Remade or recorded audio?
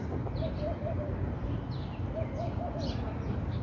recorded